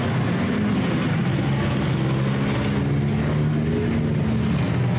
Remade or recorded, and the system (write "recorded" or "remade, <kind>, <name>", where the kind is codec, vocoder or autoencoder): recorded